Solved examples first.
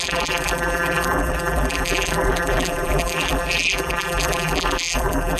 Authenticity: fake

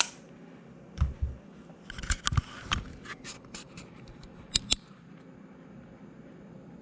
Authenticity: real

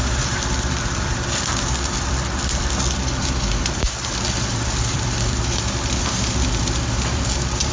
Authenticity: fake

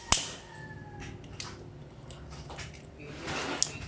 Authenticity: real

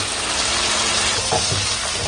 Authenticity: real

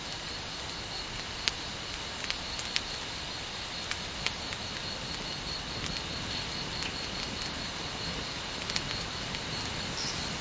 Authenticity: real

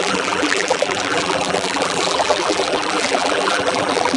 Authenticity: fake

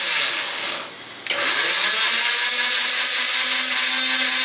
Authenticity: real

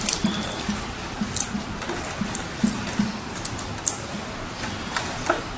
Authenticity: fake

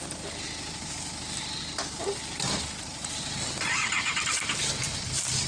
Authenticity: real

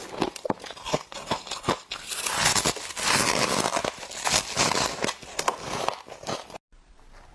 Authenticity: real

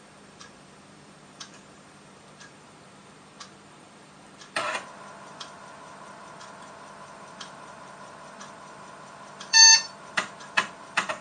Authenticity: fake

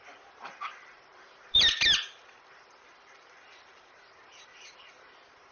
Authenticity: fake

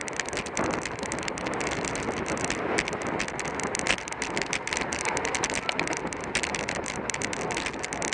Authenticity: real